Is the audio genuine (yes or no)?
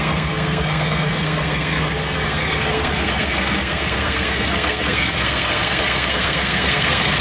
no